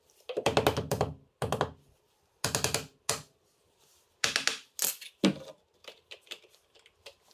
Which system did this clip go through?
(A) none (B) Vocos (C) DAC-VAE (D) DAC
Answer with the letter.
A